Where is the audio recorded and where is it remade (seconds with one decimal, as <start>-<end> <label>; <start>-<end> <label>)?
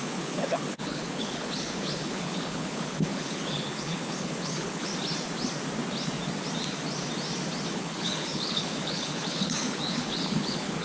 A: 0.0-4.9 remade; 4.9-7.7 recorded; 7.7-10.8 remade